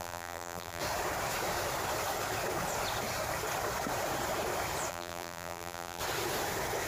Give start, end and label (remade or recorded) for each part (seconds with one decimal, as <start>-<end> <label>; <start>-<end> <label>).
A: 0.0-0.8 remade; 0.8-4.9 recorded; 4.9-6.0 remade; 6.0-6.9 recorded